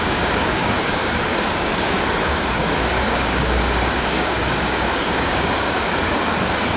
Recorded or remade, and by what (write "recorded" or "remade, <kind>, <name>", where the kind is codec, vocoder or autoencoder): remade, codec, DAC